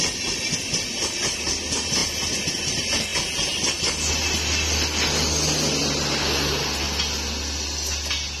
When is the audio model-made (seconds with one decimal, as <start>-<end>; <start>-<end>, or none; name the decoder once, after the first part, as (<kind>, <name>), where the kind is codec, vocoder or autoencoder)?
none